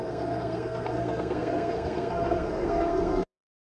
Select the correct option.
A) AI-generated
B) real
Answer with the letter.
A